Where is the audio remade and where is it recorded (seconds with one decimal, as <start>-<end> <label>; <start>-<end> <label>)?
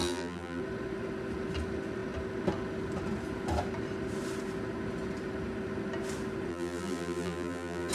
0.0-0.6 remade; 0.6-6.5 recorded; 6.5-7.9 remade